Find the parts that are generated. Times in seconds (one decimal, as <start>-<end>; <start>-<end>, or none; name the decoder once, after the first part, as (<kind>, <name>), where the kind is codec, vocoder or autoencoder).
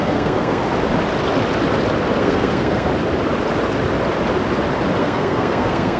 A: 0.0-0.6 (codec, SNAC); 2.2-2.9; 5.0-6.0